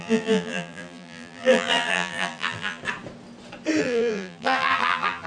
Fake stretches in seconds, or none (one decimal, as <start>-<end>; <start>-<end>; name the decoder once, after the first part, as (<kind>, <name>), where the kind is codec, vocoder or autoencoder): 0.0-2.8 (vocoder, BigVGAN v2); 3.8-5.3